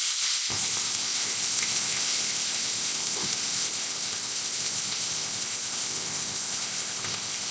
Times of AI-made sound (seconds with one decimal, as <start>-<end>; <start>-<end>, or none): 0.0-7.5